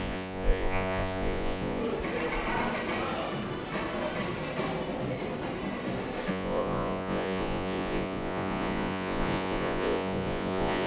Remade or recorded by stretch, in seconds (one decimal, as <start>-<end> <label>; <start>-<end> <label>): 0.0-1.8 remade; 1.8-6.3 recorded; 6.3-10.9 remade